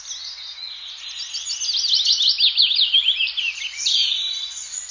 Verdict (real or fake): real